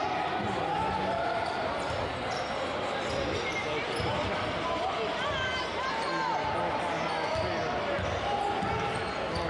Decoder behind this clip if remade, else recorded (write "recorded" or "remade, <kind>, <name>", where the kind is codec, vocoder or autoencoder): recorded